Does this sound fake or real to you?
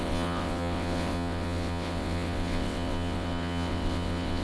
fake